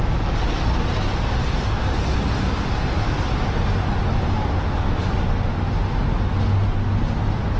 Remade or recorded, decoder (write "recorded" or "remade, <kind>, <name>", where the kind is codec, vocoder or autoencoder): recorded